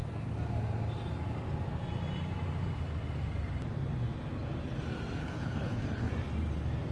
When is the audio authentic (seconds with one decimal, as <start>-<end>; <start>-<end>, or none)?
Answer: 0.0-5.2; 6.1-6.9